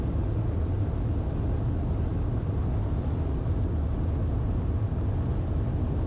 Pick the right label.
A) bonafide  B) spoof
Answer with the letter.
A